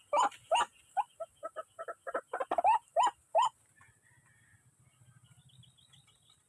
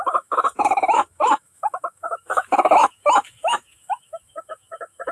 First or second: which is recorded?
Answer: first